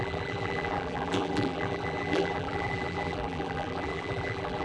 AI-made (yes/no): yes